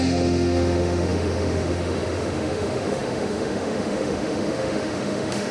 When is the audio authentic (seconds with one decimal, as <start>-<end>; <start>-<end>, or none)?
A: none

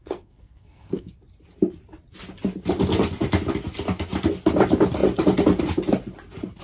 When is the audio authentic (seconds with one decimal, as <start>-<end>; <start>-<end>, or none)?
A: 1.1-6.6